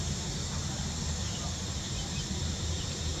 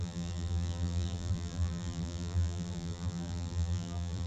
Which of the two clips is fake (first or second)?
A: second